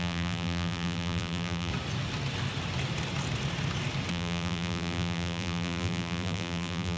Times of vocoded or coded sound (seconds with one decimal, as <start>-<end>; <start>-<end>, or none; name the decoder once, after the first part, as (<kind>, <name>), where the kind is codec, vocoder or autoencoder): 0.0-1.7 (vocoder, BigVGAN v2); 4.1-7.0

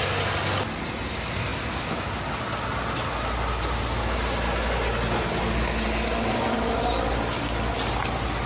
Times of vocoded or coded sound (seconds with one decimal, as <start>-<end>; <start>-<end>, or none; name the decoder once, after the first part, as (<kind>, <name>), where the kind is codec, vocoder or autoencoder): none

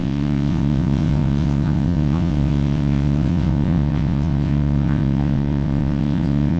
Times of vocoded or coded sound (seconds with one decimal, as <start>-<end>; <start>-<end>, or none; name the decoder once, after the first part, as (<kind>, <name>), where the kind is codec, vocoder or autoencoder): 0.0-6.6 (vocoder, WaveNeXt)

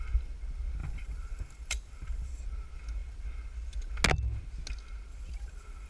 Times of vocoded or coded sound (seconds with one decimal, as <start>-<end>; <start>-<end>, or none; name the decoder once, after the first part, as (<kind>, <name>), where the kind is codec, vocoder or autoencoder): 0.8-2.4 (vocoder, BigVGAN v2); 5.1-5.9

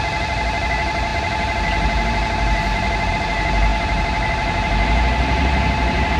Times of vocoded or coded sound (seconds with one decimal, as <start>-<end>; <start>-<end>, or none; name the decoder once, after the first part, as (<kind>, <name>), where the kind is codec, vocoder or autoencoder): none

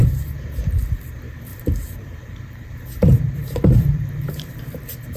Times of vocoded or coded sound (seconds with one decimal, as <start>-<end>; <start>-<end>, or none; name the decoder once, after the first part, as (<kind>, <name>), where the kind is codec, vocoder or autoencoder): 0.0-0.7 (vocoder, BigVGAN v2); 1.5-4.6